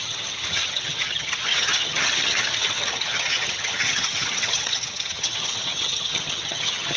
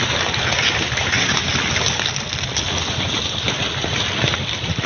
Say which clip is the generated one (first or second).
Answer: first